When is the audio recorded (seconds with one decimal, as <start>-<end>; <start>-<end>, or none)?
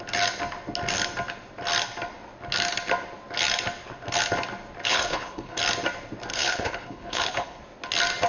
0.0-4.9; 5.6-6.3; 7.6-8.3